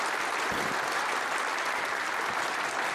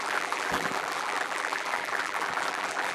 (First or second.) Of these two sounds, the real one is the first